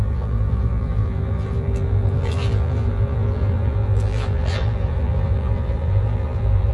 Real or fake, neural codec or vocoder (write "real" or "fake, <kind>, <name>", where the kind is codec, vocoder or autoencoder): fake, vocoder, BigVGAN v2